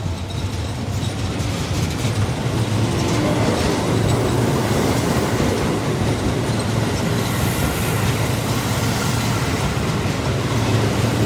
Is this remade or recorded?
recorded